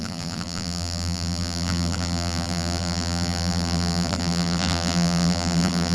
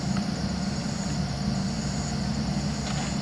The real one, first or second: second